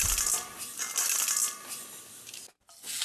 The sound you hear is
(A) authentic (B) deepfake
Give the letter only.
A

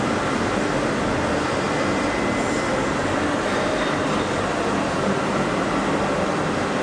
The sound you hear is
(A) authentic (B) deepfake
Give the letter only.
A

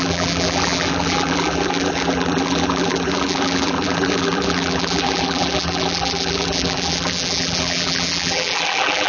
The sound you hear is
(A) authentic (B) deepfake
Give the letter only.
B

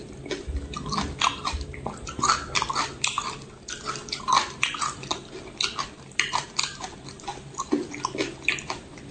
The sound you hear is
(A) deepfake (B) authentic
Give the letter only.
B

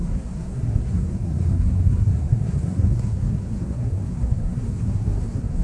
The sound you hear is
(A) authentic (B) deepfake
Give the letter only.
B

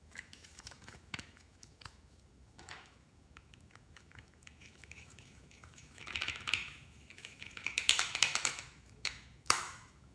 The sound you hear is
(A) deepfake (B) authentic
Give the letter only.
A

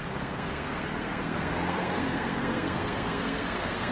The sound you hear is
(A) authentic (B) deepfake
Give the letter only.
B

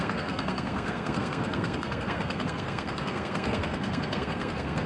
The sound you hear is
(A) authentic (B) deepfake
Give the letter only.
B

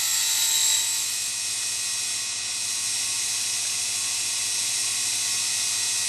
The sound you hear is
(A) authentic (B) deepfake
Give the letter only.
A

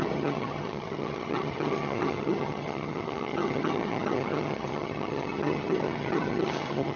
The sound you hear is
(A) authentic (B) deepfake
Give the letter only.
B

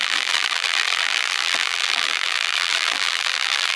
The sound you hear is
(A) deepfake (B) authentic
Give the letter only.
A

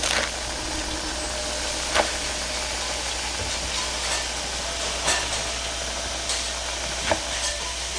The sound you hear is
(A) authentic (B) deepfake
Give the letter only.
A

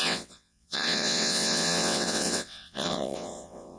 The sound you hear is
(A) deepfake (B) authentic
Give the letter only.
A